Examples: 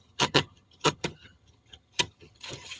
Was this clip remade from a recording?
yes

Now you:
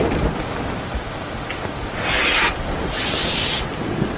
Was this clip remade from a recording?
no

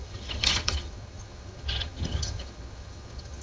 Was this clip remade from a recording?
yes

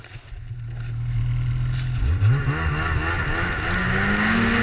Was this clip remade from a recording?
no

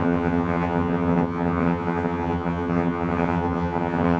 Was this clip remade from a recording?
yes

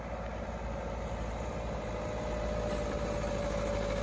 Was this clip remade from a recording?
no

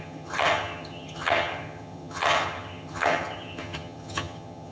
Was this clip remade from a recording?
yes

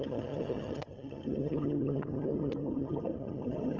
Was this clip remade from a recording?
yes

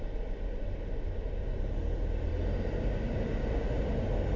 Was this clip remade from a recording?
no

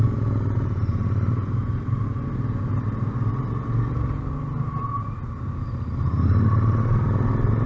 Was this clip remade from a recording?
no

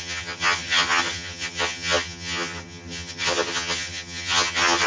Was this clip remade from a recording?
yes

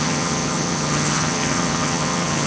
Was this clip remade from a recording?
yes